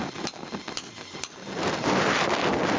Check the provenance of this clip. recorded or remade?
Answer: recorded